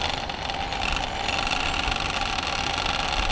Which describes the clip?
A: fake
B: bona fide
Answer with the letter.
B